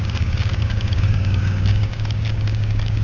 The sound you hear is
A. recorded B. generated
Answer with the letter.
B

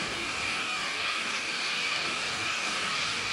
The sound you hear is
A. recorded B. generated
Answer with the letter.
B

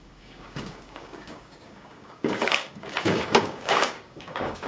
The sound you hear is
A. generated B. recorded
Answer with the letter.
A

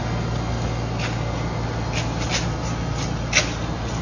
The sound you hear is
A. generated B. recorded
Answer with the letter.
B